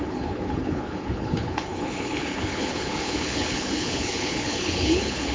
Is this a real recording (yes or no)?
no